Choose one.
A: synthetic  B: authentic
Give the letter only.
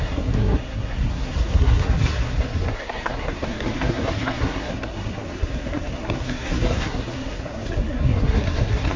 A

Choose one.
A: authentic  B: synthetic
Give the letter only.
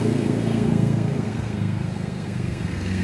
B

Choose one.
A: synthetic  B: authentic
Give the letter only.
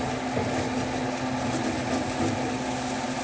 B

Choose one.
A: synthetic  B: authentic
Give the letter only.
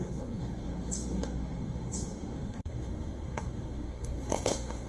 A